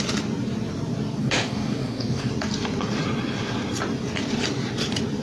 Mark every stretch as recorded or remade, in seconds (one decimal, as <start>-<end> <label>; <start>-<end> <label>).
0.0-1.2 recorded; 1.2-2.3 remade; 2.3-5.2 recorded

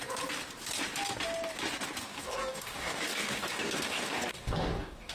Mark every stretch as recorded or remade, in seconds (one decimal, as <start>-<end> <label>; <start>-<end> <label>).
0.0-2.0 recorded; 2.0-5.1 remade

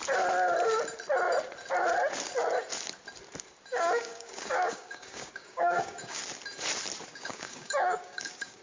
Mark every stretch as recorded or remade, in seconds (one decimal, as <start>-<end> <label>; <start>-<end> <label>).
0.0-3.7 recorded; 3.7-6.2 remade; 6.2-7.1 recorded; 7.1-8.6 remade

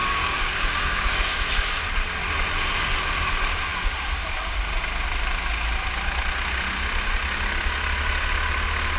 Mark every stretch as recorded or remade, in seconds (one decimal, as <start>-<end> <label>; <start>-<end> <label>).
0.0-1.5 remade; 1.5-9.0 recorded

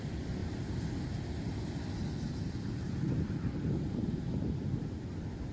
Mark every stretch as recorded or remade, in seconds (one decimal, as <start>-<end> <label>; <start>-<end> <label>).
0.0-5.5 recorded